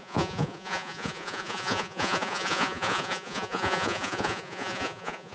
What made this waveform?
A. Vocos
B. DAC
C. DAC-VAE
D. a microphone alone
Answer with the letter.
A